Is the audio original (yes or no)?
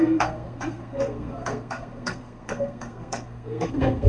no